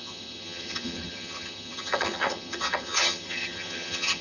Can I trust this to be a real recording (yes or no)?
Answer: no